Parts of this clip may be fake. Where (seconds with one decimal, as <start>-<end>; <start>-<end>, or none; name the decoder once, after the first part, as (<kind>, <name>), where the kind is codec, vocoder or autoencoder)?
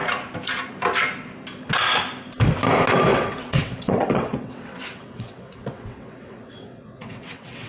3.1-7.7 (vocoder, WaveNeXt)